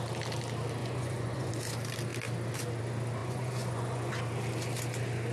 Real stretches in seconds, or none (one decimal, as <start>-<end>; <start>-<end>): 0.0-0.8; 1.5-3.2; 4.1-5.3